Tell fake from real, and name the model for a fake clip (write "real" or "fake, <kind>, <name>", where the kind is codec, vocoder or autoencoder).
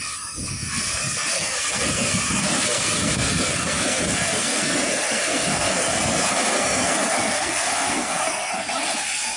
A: fake, codec, SNAC